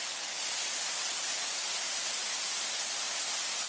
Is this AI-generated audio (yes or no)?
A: no